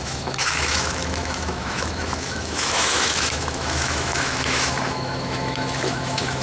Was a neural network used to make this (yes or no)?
yes